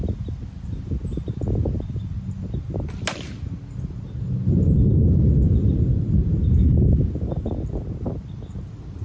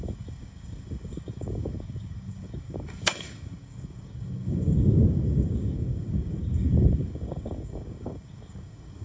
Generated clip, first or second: second